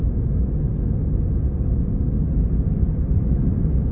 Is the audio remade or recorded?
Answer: recorded